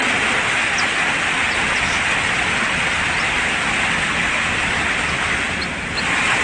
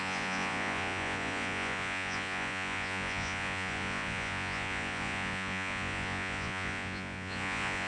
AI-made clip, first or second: second